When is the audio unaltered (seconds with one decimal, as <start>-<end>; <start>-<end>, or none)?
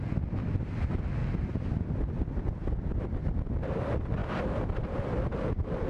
0.0-1.2; 2.3-5.9